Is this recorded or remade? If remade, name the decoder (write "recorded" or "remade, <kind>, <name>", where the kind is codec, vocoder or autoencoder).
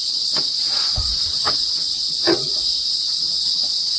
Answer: remade, vocoder, WaveNeXt